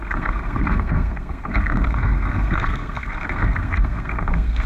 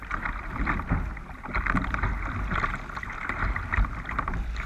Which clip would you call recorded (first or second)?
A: second